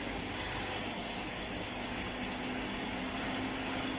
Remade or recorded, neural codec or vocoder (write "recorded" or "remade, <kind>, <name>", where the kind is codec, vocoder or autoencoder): remade, codec, DAC